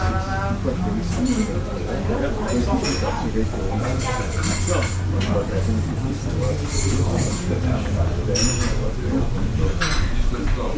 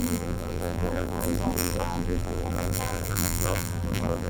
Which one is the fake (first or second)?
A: second